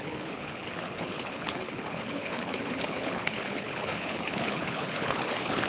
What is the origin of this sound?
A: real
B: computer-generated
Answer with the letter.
B